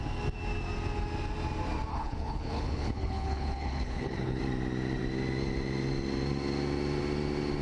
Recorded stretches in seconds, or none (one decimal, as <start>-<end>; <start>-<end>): 0.0-1.9; 4.4-7.6